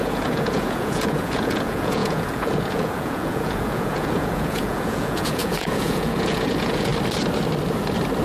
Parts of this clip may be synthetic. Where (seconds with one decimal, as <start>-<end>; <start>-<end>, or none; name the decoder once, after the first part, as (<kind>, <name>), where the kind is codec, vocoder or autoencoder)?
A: 0.0-6.9 (vocoder, Vocos)